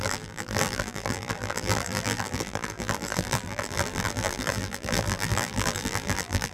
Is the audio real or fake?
fake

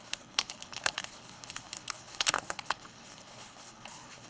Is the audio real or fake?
fake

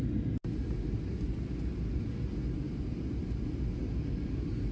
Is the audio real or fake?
real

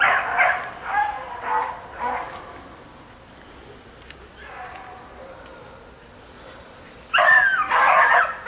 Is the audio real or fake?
real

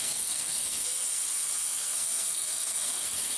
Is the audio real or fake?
fake